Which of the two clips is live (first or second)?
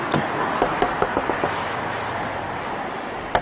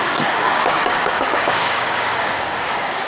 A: first